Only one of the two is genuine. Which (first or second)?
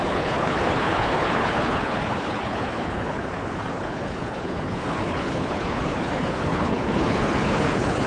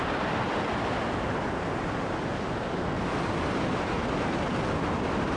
second